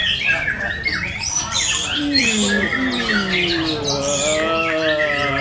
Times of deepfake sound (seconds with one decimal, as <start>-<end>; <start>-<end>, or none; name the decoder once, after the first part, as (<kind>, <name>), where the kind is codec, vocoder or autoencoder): 0.0-2.2 (vocoder, BigVGAN v2)